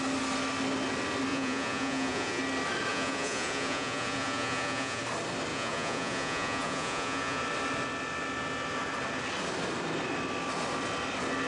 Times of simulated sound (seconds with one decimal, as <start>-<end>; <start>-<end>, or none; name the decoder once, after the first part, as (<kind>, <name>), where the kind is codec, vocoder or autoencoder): 1.3-2.4 (vocoder, Vocos); 2.9-5.0; 5.5-7.4